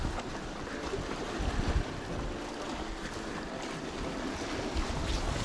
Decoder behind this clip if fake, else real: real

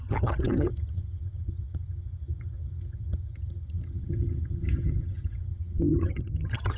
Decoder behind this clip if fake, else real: fake, vocoder, HiFi-GAN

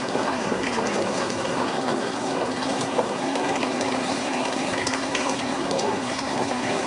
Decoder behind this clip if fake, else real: fake, codec, SNAC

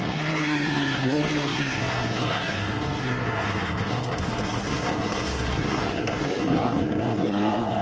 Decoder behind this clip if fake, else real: fake, codec, SNAC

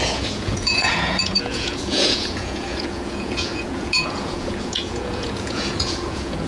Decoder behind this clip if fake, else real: fake, vocoder, Vocos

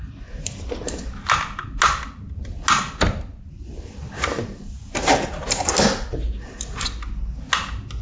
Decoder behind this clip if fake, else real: real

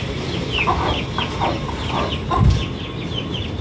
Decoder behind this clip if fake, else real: real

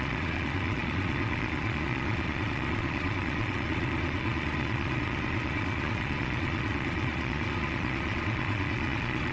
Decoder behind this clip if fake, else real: fake, vocoder, Vocos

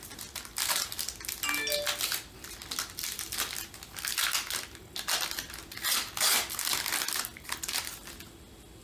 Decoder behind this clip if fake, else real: real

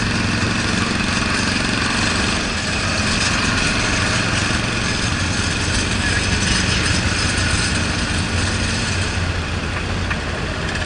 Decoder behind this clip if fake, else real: real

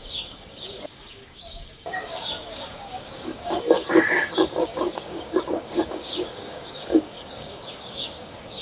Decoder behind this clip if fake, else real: fake, codec, DAC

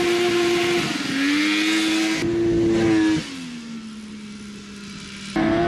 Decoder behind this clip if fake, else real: real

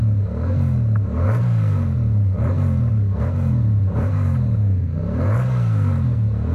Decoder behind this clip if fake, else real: fake, codec, SNAC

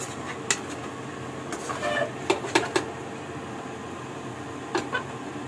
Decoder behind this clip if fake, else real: real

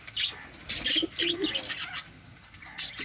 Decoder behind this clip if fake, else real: real